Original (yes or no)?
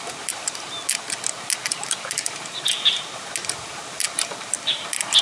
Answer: yes